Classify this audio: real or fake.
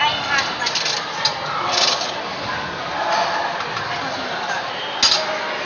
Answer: real